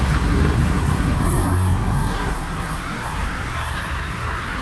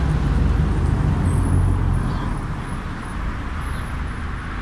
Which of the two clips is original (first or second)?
second